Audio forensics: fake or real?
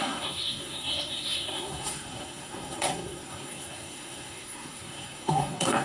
fake